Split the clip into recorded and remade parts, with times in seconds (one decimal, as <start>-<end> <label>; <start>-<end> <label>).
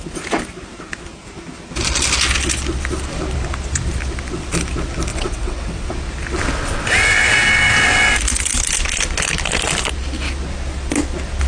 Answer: 0.0-5.1 recorded; 5.1-5.9 remade; 5.9-11.5 recorded